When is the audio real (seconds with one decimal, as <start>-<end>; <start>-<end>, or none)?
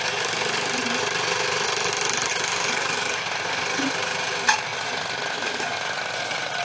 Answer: 0.0-2.3; 3.2-6.6